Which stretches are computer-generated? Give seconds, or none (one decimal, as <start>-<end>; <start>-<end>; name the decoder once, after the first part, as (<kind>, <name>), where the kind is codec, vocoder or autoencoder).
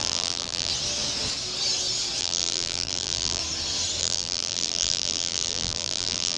0.0-0.7 (vocoder, BigVGAN v2); 2.2-3.4; 4.0-6.4